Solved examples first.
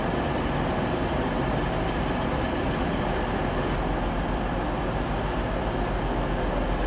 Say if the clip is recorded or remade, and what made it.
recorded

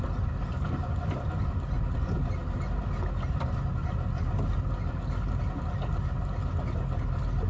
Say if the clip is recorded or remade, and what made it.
recorded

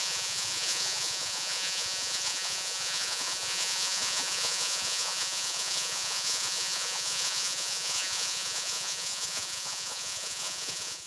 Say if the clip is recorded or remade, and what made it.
remade, vocoder, Vocos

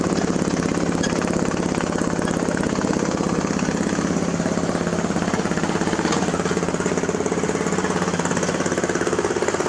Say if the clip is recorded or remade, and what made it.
recorded